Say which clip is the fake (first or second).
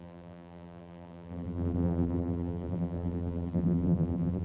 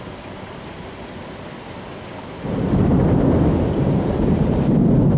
first